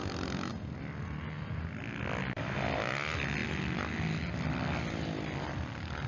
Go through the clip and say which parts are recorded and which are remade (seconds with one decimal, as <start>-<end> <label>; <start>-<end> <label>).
0.0-6.1 recorded